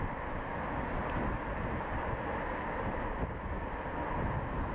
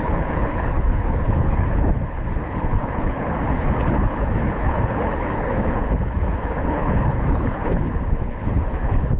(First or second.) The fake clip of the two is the second